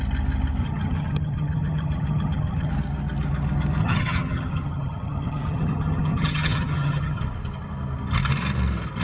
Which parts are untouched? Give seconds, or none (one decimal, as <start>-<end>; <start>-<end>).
0.0-0.6; 2.7-3.8; 7.2-9.0

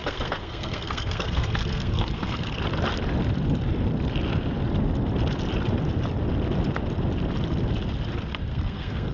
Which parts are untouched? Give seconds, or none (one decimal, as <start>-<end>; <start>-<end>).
2.6-8.5

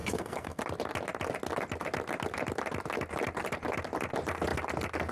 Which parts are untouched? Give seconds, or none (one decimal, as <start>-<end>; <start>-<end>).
0.6-5.1

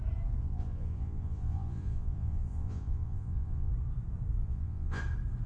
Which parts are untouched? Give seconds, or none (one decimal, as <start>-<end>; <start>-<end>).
0.0-0.4; 3.7-4.4; 5.0-5.5

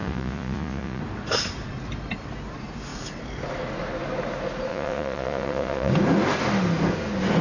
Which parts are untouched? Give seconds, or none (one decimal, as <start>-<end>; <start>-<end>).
1.0-4.7; 5.9-7.4

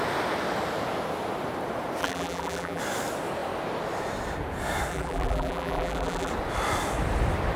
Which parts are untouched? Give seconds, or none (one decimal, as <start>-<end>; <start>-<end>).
0.0-2.0; 2.8-4.9; 6.3-7.6

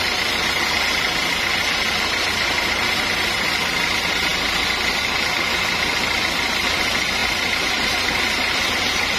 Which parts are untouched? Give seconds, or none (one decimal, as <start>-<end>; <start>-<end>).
0.0-9.2

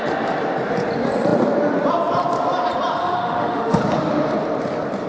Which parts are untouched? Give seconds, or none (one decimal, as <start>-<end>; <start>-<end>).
0.0-3.0; 3.8-5.1